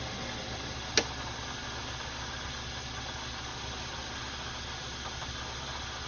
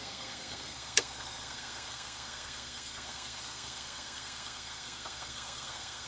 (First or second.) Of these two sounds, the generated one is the second